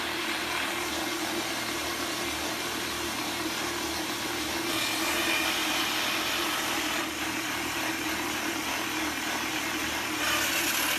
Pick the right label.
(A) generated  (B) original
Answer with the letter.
B